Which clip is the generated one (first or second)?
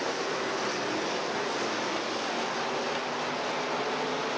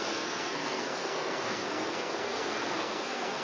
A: second